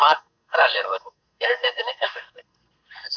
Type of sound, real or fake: fake